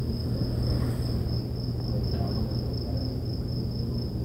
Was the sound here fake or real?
real